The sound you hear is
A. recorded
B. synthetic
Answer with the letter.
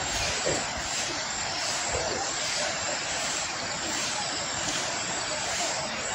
B